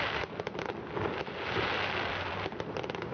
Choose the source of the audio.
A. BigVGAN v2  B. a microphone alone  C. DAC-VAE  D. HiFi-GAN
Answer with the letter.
B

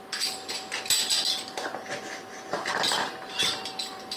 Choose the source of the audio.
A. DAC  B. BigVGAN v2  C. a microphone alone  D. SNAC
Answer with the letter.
C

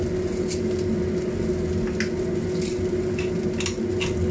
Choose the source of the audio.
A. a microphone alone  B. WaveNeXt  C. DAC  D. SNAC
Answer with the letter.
A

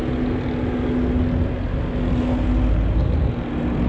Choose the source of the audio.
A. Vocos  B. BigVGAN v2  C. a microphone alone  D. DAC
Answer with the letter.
C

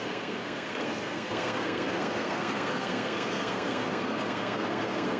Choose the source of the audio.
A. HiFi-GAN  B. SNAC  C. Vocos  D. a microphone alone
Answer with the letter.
B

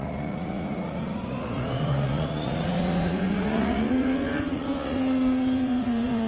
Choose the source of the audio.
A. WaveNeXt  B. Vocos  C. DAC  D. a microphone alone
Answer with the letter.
B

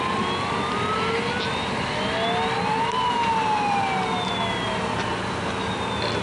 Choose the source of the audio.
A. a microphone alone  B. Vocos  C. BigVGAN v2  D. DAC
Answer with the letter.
A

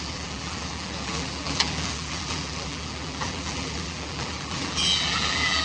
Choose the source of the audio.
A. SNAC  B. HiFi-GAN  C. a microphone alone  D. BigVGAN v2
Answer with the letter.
D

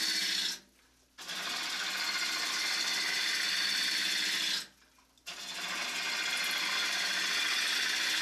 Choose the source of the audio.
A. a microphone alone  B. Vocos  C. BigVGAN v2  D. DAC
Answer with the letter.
A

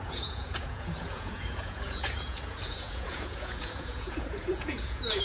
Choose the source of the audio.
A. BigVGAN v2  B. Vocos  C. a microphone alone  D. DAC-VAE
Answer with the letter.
B